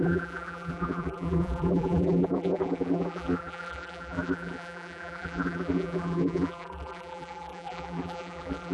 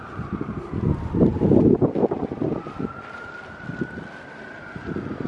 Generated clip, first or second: first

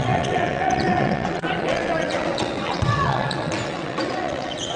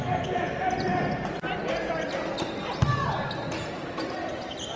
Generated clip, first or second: first